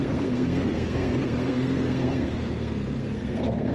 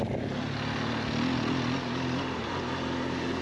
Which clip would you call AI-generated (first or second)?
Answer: first